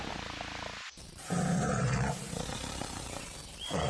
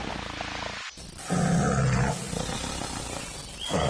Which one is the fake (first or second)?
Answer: first